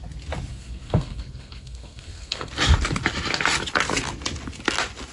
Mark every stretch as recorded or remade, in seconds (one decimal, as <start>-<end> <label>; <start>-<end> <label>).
0.0-0.5 recorded; 0.5-2.5 remade; 2.5-5.1 recorded